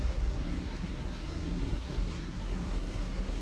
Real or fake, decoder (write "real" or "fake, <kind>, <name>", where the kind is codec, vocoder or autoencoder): fake, codec, SNAC